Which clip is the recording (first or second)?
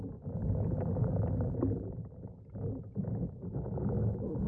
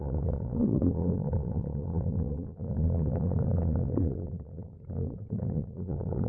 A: first